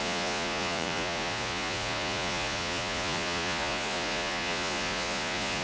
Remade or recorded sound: remade